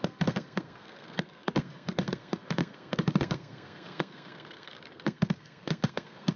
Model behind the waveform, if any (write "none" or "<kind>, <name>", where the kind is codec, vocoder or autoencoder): codec, SNAC